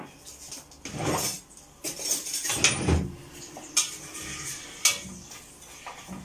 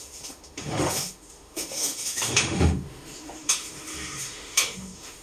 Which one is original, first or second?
first